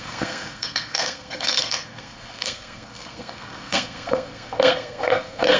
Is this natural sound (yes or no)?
no